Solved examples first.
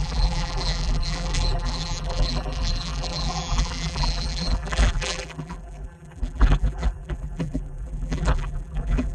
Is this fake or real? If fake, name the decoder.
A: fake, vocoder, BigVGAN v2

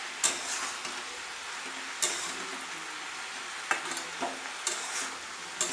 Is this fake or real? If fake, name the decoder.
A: real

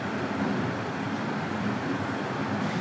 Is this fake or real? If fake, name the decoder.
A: fake, vocoder, BigVGAN v2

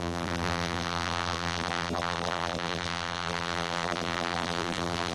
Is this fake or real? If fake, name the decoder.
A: fake, vocoder, BigVGAN v2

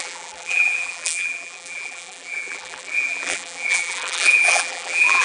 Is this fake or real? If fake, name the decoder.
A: fake, vocoder, BigVGAN v2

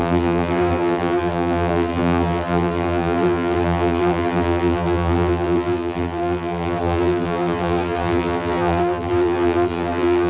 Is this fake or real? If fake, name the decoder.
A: fake, vocoder, BigVGAN v2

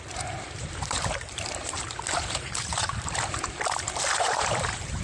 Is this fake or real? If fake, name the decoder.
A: fake, vocoder, BigVGAN v2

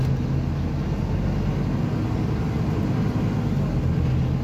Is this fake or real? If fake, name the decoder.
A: real